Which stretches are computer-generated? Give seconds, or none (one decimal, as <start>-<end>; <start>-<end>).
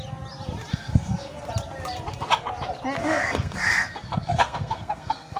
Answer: 0.7-1.5; 3.0-5.4